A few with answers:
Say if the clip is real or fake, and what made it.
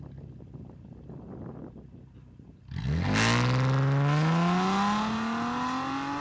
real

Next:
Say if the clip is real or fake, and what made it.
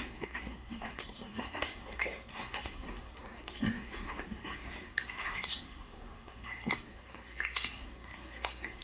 fake, codec, SNAC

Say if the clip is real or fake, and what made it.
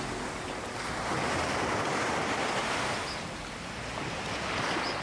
real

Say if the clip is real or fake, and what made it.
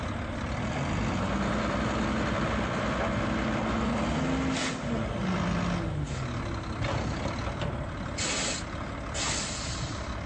real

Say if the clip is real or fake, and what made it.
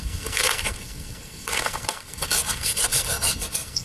fake, codec, SNAC